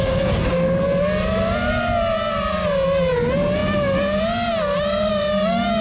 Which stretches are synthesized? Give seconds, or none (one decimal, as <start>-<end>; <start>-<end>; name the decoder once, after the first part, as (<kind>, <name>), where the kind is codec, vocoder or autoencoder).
none